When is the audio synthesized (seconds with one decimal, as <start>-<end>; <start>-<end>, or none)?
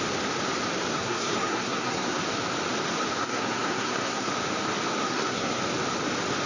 0.9-2.2; 3.2-4.3; 5.0-5.6